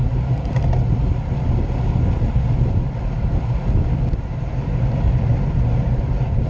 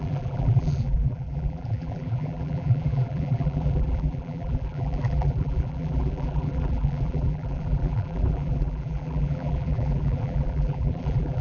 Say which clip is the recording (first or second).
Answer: first